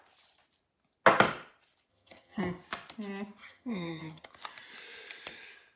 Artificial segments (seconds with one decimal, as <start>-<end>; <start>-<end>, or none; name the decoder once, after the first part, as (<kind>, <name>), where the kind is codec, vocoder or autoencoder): 1.9-2.4 (vocoder, HiFi-GAN); 3.4-4.3

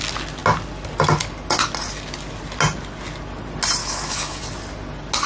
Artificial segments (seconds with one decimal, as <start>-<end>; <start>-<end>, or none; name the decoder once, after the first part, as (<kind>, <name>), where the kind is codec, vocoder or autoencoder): 3.8-4.4 (autoencoder, DAC-VAE)

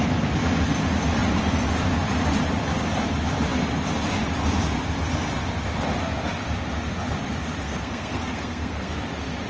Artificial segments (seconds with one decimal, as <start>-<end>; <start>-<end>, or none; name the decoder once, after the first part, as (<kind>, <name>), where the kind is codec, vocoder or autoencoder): 7.6-8.9 (codec, SNAC)

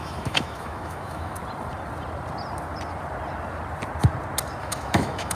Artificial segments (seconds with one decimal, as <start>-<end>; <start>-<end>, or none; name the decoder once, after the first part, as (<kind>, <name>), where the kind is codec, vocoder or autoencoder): 0.0-1.4 (autoencoder, DAC-VAE); 4.6-5.4

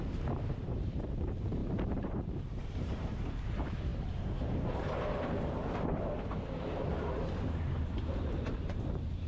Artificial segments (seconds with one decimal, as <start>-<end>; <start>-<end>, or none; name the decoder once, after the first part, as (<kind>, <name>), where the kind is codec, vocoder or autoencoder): 0.0-9.3 (vocoder, BigVGAN v2)